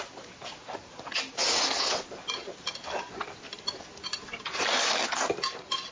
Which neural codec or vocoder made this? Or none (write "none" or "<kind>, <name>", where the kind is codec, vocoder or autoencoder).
none